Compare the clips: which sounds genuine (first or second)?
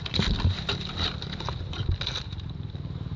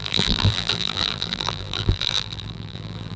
first